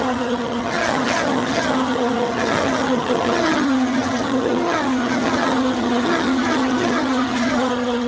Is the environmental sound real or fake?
fake